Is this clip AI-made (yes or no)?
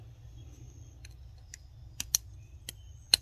no